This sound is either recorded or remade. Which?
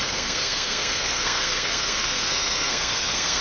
remade